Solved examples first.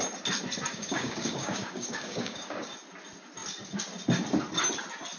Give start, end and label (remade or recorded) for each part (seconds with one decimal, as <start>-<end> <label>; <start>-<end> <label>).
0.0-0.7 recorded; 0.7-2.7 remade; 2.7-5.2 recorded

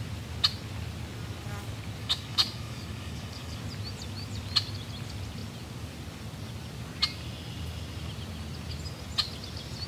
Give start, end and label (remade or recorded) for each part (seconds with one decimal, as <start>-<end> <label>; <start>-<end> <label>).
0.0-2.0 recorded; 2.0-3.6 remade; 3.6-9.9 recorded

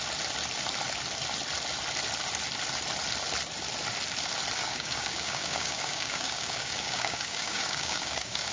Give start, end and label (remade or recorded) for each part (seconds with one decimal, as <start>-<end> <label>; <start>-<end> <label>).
0.0-4.6 recorded; 4.6-8.5 remade

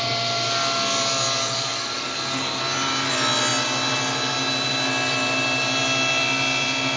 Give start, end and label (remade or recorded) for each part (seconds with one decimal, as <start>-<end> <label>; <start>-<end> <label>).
0.0-1.4 recorded; 1.4-2.6 remade; 2.6-7.0 recorded

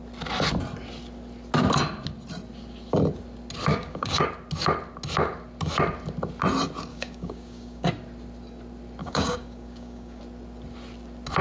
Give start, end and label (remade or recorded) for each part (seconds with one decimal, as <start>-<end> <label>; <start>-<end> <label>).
0.0-3.7 recorded; 3.7-4.3 remade; 4.3-6.9 recorded; 6.9-7.9 remade; 7.9-9.0 recorded; 9.0-10.2 remade; 10.2-11.4 recorded

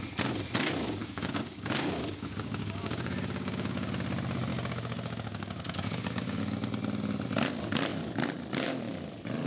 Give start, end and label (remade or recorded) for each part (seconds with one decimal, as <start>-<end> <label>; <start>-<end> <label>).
0.0-1.0 recorded; 1.0-3.9 remade; 3.9-4.5 recorded; 4.5-6.4 remade; 6.4-9.5 recorded